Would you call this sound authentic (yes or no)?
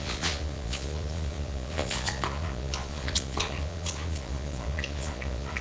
no